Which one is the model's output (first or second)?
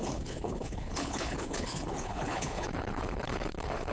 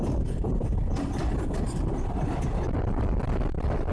first